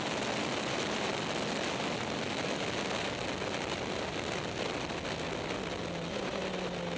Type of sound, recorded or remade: recorded